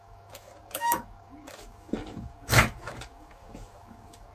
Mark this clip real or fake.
fake